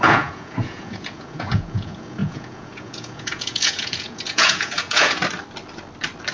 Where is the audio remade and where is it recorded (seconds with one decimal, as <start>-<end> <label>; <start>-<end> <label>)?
0.0-5.2 remade; 5.2-6.3 recorded